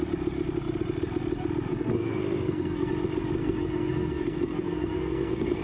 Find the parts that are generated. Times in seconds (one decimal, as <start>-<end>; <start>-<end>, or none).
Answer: 1.7-2.9; 3.4-5.6